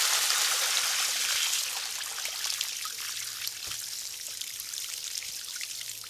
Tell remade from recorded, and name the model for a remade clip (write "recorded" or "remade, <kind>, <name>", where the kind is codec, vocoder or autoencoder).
recorded